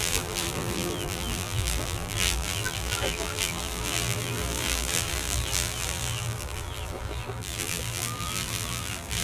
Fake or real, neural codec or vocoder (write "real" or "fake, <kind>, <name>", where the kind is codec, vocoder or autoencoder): fake, vocoder, BigVGAN v2